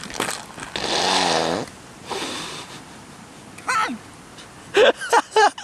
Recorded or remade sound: recorded